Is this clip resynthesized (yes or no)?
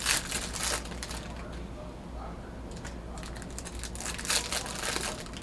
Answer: no